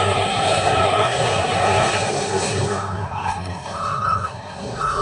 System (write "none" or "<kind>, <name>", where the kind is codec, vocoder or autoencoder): codec, SNAC